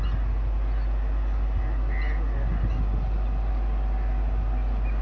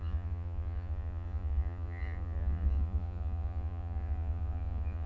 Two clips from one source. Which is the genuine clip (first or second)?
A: first